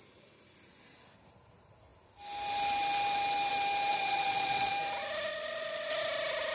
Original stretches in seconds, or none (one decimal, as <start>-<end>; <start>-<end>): 0.0-3.9; 4.7-5.3; 5.9-6.5